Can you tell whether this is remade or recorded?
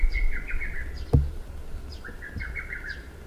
recorded